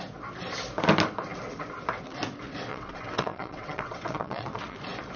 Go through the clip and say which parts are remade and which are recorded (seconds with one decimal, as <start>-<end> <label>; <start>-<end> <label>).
0.0-2.7 recorded; 2.7-4.8 remade; 4.8-5.2 recorded